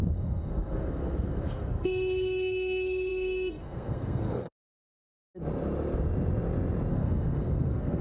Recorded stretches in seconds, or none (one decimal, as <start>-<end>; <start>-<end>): 5.3-6.9